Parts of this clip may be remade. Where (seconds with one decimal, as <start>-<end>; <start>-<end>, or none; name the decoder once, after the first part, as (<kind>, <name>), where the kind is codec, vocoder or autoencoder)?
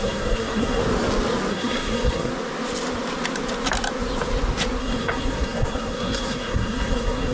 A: 0.0-0.8 (codec, SNAC); 1.5-2.3; 4.8-7.3